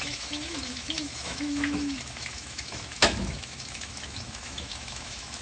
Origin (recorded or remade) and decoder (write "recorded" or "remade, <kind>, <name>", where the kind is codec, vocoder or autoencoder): remade, autoencoder, DAC-VAE